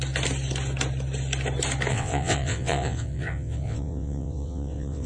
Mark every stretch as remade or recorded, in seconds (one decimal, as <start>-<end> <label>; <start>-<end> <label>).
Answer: 0.0-1.9 recorded; 1.9-5.1 remade